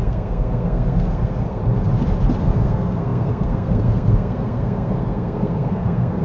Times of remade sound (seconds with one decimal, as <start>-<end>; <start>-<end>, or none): 0.0-1.6; 2.4-6.2